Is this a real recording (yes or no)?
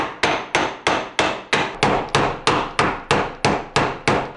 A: yes